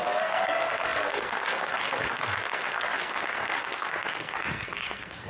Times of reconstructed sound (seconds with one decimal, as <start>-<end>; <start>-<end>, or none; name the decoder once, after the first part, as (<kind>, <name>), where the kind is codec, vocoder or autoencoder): 0.0-5.3 (codec, SNAC)